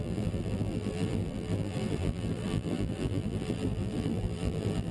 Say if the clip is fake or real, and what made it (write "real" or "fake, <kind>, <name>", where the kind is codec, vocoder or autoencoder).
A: fake, vocoder, BigVGAN v2